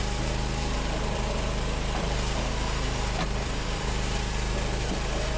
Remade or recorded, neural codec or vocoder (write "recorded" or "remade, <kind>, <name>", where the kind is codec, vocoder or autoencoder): remade, vocoder, BigVGAN v2